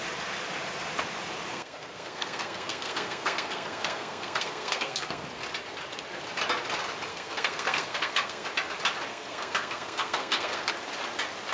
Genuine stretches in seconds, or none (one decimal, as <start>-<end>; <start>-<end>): 0.0-1.5; 5.2-7.1; 8.5-9.1; 10.7-11.5